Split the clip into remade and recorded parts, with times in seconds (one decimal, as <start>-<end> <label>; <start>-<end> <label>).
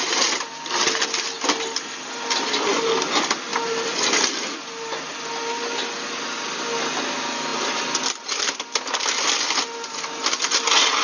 0.0-11.0 recorded